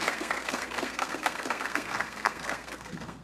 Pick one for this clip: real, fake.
fake